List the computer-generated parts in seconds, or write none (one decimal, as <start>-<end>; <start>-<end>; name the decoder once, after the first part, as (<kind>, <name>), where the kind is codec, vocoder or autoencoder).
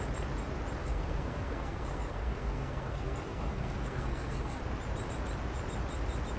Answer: 0.8-4.6 (codec, SNAC)